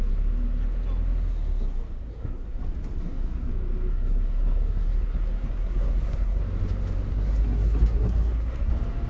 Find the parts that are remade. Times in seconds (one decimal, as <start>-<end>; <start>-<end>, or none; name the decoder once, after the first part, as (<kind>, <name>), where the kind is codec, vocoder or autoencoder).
2.1-2.6 (codec, SNAC); 3.0-3.5; 3.9-6.4; 7.1-8.7